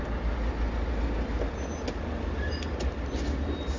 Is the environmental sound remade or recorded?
recorded